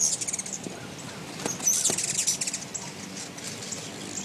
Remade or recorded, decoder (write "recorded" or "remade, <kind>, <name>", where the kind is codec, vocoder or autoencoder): recorded